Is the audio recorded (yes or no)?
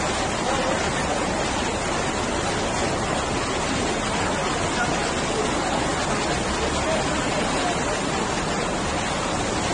yes